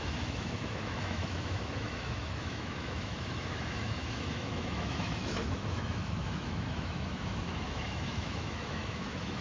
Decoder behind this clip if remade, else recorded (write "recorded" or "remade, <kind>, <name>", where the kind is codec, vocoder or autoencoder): remade, autoencoder, DAC-VAE